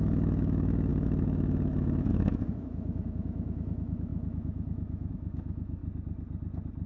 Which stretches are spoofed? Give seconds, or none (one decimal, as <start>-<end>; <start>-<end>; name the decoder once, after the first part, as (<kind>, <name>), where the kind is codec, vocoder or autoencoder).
0.0-5.8 (autoencoder, DAC-VAE)